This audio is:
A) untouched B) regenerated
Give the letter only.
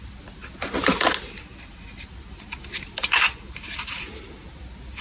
A